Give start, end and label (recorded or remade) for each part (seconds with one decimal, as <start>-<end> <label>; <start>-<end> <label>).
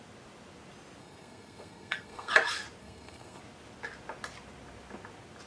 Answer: 0.0-1.0 recorded; 1.0-2.3 remade; 2.3-2.8 recorded; 2.8-3.4 remade; 3.4-5.5 recorded